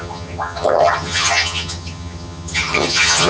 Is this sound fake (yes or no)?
yes